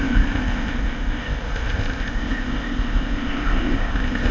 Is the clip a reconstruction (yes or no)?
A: yes